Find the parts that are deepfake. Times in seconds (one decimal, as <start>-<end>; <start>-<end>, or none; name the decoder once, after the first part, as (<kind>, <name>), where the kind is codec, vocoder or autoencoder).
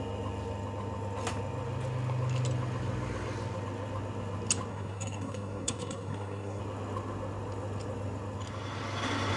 4.7-6.6 (codec, SNAC)